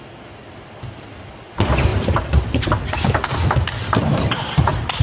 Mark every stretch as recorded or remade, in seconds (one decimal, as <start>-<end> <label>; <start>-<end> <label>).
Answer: 0.0-1.9 recorded; 1.9-2.6 remade; 2.6-4.0 recorded; 4.0-5.0 remade